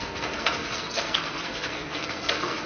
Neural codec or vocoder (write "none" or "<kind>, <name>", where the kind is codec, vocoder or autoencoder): codec, SNAC